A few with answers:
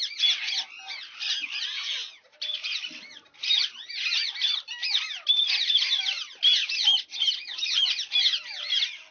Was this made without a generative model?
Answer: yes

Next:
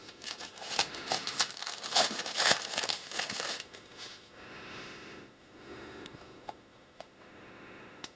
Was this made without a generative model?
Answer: no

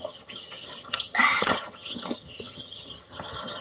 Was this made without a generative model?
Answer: no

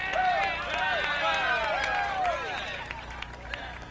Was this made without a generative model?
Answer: yes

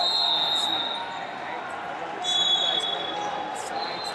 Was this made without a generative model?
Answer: yes